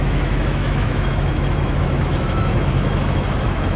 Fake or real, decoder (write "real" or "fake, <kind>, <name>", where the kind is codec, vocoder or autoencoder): fake, autoencoder, DAC-VAE